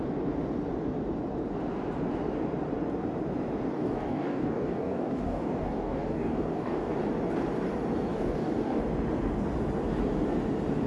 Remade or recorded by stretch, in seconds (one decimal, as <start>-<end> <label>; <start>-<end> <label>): 0.0-3.7 recorded; 3.7-6.9 remade; 6.9-8.1 recorded; 8.1-8.8 remade; 8.8-10.9 recorded